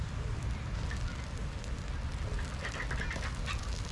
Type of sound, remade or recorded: recorded